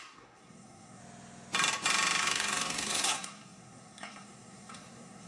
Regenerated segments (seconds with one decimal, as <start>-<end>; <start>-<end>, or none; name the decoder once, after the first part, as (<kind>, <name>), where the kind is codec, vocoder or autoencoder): 0.0-1.0 (codec, SNAC); 2.2-5.3